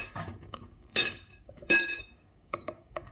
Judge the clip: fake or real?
fake